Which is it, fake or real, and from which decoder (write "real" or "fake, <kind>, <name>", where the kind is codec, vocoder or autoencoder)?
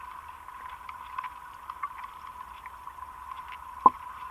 real